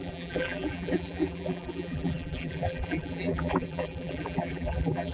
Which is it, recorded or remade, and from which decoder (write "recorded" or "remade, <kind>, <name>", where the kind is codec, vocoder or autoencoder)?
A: remade, vocoder, BigVGAN v2